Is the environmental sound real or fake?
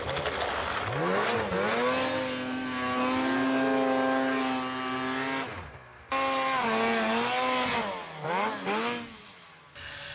real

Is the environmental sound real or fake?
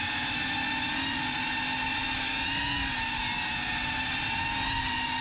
real